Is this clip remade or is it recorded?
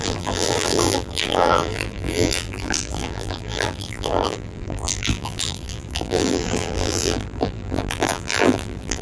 remade